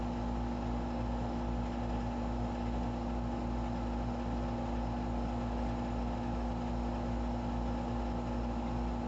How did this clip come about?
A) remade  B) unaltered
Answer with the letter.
B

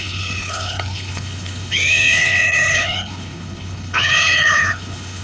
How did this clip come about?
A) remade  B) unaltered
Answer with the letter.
A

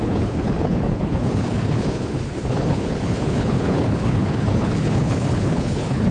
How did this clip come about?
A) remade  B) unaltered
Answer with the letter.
A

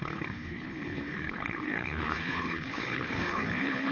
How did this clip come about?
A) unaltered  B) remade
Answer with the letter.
B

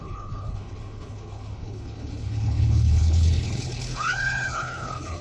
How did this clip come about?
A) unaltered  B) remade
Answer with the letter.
B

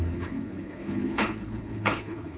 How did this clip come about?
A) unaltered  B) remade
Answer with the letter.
B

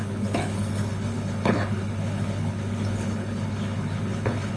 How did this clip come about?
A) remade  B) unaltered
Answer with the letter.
A